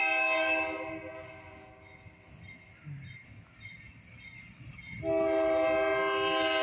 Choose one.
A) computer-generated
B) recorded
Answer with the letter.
B